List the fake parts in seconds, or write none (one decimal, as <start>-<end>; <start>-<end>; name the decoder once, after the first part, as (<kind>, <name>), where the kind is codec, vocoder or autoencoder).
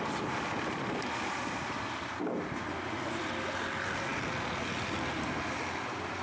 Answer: none